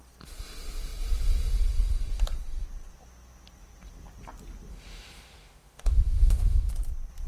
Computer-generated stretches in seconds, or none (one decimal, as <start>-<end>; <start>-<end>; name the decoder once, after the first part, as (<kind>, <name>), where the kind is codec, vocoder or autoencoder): 4.7-6.7 (autoencoder, DAC-VAE)